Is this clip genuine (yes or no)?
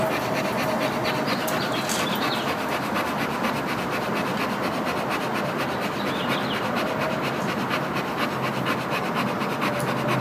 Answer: yes